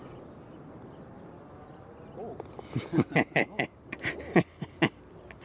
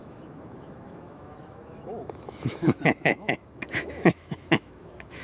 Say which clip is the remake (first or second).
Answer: second